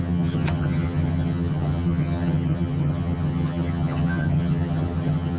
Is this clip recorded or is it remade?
remade